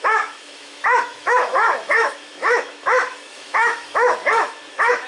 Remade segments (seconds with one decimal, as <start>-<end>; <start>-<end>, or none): 0.0-5.1